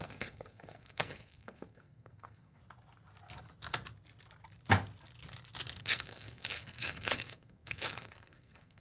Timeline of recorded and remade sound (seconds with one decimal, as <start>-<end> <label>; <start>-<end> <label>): 0.0-2.6 remade; 2.6-5.8 recorded; 5.8-8.8 remade

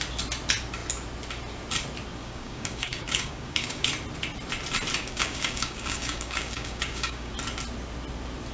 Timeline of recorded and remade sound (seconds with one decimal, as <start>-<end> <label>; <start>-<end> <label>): 0.0-2.2 recorded; 2.2-3.9 remade; 3.9-5.0 recorded; 5.0-7.3 remade; 7.3-8.5 recorded

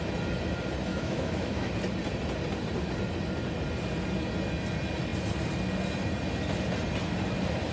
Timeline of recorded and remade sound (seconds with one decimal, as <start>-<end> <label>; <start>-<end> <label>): 0.0-0.9 recorded; 0.9-1.7 remade; 1.7-7.7 recorded